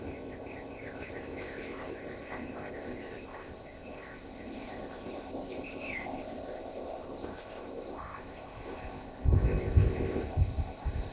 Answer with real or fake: fake